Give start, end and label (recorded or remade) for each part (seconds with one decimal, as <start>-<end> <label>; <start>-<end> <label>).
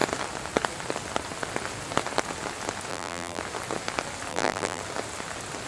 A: 0.0-2.9 recorded; 2.9-3.4 remade; 3.4-4.3 recorded; 4.3-4.8 remade; 4.8-5.7 recorded